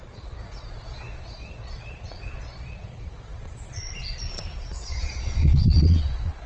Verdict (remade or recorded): remade